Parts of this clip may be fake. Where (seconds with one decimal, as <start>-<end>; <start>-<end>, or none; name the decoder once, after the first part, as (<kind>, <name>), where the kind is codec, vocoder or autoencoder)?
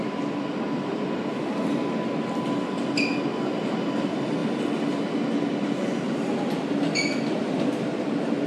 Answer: none